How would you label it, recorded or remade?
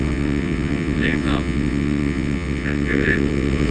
remade